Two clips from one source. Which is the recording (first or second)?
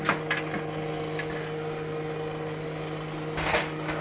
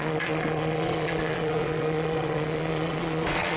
first